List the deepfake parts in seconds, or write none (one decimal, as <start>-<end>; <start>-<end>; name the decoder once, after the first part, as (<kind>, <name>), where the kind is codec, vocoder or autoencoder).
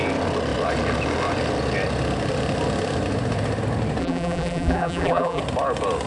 4.0-5.4 (vocoder, BigVGAN v2)